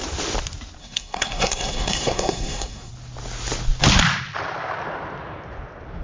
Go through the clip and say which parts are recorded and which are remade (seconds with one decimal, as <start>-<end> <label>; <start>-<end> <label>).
0.0-0.8 recorded; 0.8-2.9 remade; 2.9-6.0 recorded